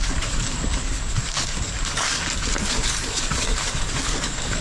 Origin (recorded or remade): remade